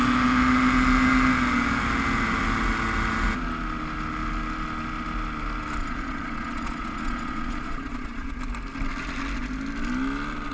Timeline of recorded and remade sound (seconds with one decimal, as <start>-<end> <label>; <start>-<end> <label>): 0.0-5.8 recorded; 5.8-8.4 remade; 8.4-10.5 recorded